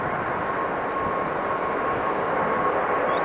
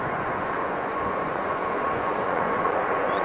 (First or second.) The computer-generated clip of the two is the second